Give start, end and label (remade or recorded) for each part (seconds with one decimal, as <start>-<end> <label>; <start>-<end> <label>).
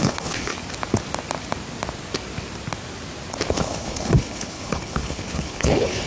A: 0.0-0.5 remade; 0.5-3.5 recorded; 3.5-6.1 remade